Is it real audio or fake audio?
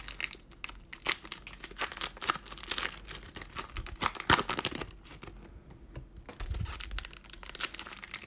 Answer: real